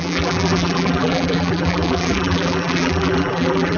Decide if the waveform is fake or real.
fake